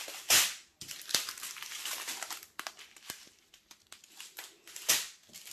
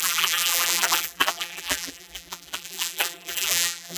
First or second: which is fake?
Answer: second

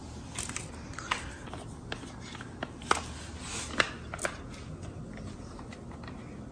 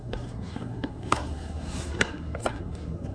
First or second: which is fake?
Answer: second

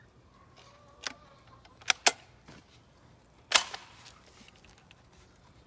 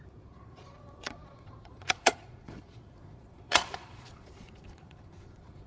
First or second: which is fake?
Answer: second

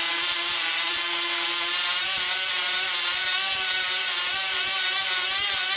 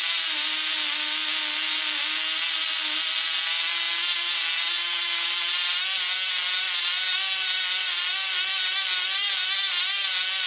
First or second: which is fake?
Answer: first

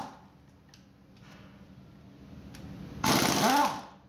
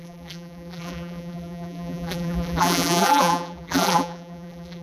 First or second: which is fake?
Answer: second